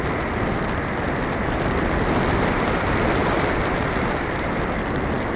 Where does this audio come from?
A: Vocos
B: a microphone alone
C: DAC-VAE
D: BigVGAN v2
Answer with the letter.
D